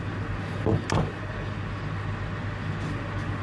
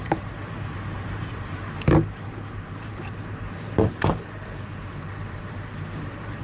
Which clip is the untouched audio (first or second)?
first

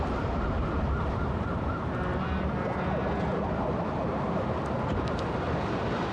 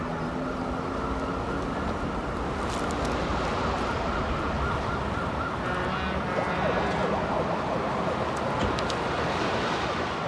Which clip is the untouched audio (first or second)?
second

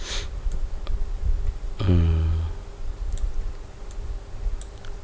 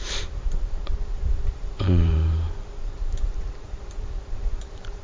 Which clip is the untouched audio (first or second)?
first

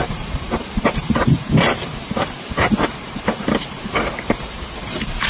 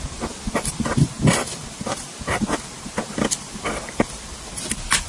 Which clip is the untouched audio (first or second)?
second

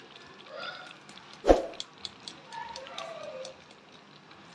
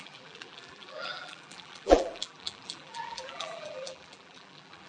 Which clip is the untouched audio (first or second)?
first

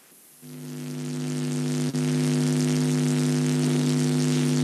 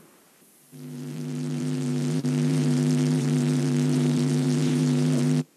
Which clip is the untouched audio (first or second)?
first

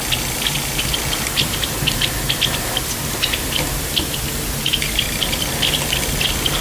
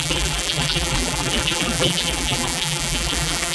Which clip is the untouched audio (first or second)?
first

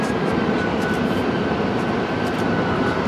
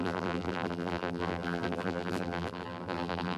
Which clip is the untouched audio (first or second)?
first